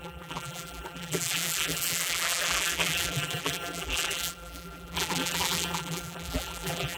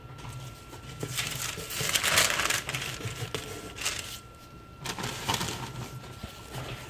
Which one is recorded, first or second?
second